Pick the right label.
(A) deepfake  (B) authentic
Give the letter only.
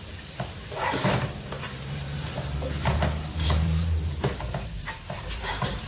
A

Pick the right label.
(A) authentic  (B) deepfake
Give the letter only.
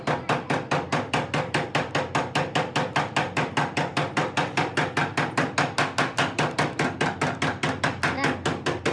A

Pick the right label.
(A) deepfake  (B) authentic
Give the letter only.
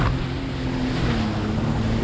B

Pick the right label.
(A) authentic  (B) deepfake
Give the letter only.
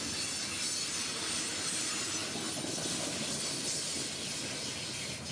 A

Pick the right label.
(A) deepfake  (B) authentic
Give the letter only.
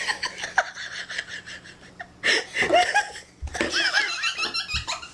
B